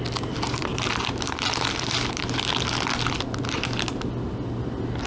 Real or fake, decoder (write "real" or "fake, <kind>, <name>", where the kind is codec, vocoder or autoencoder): real